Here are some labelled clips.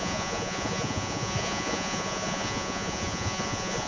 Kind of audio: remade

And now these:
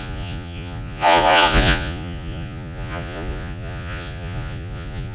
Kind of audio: remade